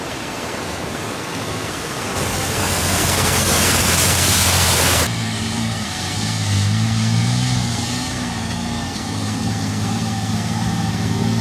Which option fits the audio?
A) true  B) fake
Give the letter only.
B